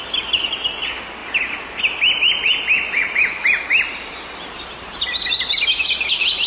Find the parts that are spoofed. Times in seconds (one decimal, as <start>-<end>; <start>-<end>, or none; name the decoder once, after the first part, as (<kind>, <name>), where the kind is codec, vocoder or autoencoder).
1.2-1.8 (vocoder, BigVGAN v2)